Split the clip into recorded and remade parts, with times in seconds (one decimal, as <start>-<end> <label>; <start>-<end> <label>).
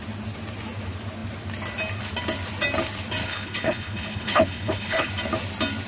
0.0-3.2 recorded; 3.2-5.1 remade; 5.1-5.9 recorded